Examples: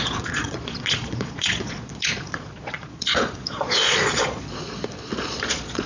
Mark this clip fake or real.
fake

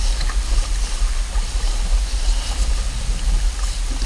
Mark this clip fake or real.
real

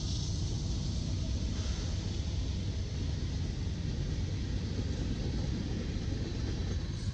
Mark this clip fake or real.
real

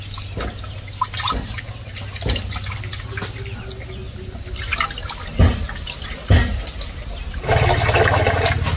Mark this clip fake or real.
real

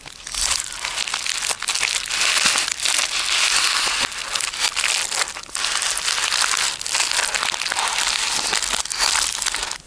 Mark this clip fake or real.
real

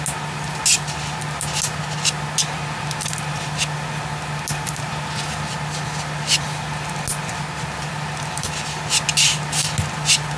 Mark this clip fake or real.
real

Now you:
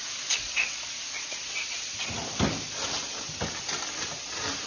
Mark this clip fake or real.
real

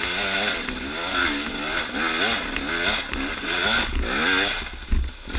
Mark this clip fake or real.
real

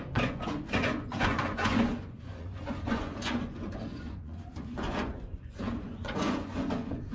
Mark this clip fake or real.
fake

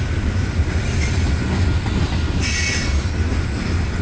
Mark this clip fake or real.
real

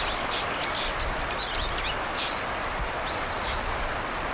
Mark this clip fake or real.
real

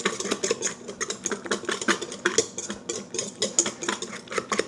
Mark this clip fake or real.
real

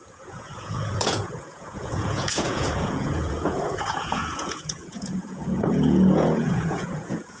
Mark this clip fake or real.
fake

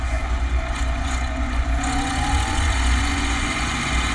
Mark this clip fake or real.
fake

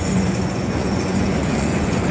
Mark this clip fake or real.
fake